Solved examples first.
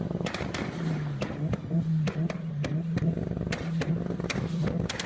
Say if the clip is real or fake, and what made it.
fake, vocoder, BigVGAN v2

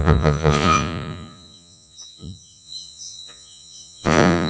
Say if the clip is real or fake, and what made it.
fake, vocoder, Vocos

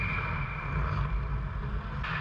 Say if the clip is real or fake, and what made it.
real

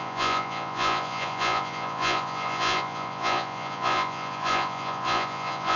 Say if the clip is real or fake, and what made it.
fake, vocoder, Vocos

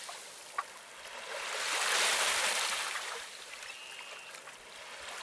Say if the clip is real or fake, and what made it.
real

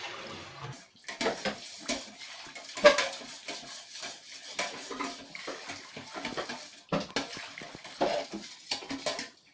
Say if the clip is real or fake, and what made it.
real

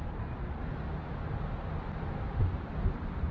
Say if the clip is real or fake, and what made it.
real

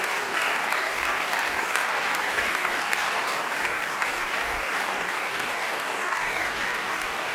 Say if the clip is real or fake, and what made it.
fake, codec, DAC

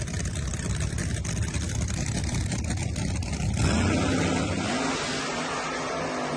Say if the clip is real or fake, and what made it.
real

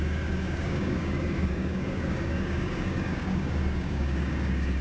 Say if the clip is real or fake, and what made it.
fake, codec, DAC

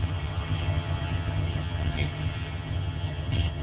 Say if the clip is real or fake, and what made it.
fake, vocoder, HiFi-GAN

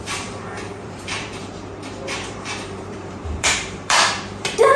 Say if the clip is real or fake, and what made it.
fake, vocoder, BigVGAN v2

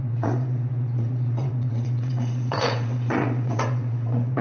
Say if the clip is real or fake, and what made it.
fake, vocoder, WaveNeXt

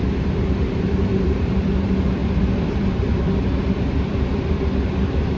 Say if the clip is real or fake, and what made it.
fake, vocoder, BigVGAN v2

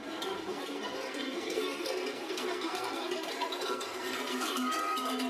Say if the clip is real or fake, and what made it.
fake, codec, SNAC